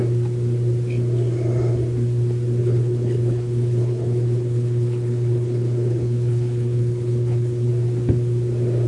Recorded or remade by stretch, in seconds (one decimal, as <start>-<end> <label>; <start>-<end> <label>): 0.0-2.6 recorded; 2.6-7.7 remade; 7.7-8.9 recorded